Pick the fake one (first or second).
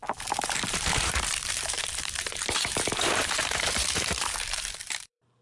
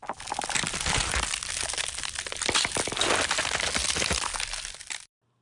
first